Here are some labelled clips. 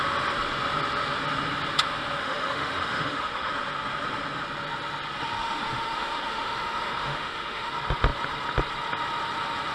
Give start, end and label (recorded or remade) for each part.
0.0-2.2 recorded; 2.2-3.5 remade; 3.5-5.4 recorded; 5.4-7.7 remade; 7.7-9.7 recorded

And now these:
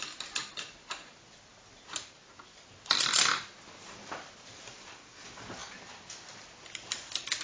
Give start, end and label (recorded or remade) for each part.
0.0-7.4 recorded